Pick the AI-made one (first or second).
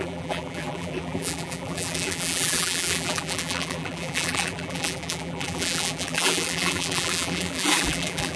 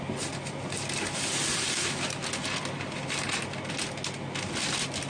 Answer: first